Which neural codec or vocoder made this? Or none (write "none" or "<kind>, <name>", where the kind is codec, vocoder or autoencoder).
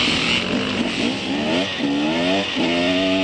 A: none